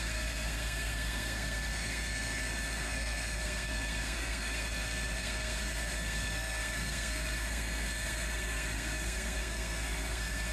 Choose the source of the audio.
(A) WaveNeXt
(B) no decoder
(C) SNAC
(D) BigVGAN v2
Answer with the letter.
C